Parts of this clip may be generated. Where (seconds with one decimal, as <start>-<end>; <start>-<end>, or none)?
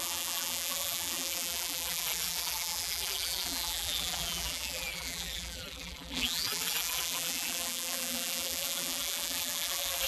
0.0-10.1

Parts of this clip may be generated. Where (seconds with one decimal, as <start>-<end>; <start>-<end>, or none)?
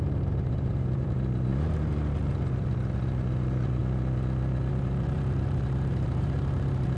0.0-1.5; 3.4-3.8; 4.7-7.0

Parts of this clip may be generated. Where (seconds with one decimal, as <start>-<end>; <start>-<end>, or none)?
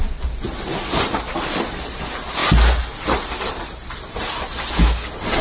none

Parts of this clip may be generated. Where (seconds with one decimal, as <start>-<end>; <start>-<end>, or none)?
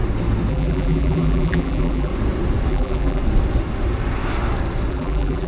0.5-2.1; 2.7-3.2; 4.9-5.5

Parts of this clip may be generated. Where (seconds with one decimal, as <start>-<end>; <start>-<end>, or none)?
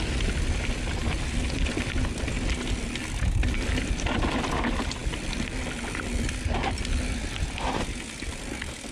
none